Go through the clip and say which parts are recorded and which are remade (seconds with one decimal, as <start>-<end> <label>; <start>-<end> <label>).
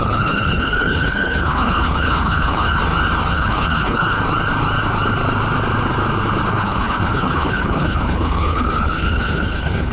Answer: 0.0-2.8 remade; 2.8-3.3 recorded; 3.3-4.2 remade; 4.2-6.5 recorded; 6.5-9.9 remade